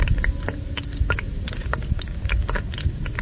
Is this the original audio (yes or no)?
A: yes